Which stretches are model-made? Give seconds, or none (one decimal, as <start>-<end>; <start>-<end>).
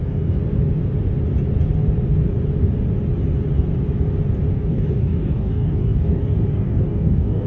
0.0-0.4; 4.5-7.5